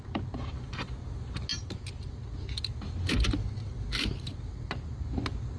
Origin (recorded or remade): recorded